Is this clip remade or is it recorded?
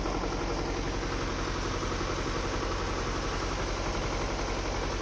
recorded